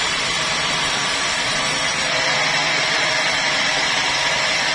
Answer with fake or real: fake